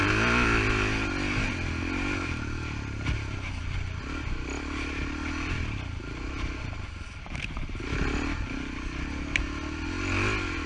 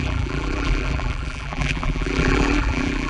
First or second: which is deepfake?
second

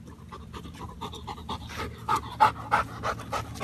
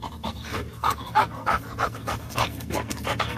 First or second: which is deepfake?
second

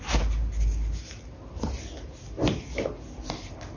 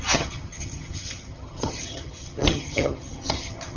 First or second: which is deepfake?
second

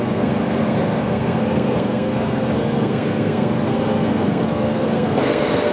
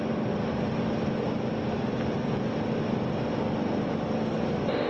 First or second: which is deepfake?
first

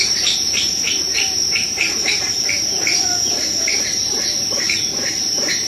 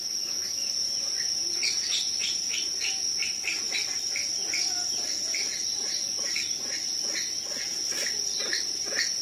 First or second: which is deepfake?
first